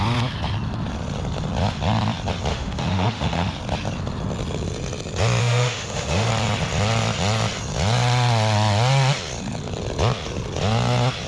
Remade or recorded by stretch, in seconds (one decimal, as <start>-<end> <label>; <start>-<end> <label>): 0.0-2.5 recorded; 2.5-3.5 remade; 3.5-5.4 recorded; 5.4-6.3 remade; 6.3-11.3 recorded